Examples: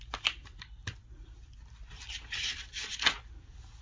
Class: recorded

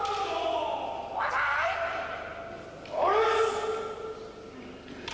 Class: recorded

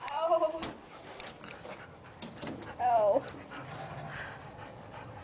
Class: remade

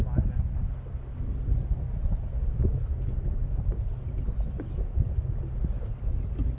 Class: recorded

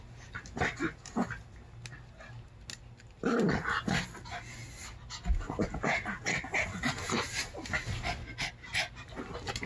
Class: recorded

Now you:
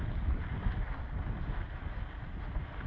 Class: recorded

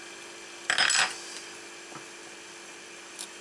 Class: recorded